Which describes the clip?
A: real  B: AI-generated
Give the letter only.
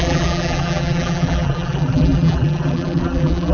B